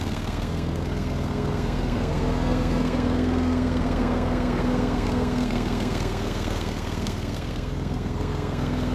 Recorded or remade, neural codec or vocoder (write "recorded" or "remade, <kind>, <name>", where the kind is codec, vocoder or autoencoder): remade, codec, SNAC